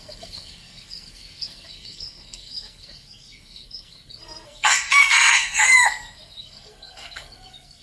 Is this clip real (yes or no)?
no